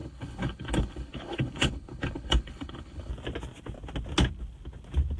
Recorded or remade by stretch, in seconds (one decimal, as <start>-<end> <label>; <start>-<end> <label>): 0.0-3.1 remade; 3.1-5.2 recorded